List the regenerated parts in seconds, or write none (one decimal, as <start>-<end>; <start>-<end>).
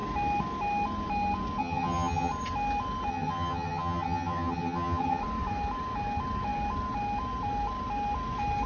1.6-2.3; 3.1-5.2